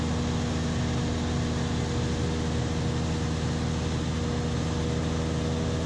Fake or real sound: real